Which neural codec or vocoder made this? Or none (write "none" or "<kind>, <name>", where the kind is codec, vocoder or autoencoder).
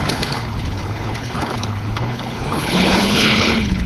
codec, HILCodec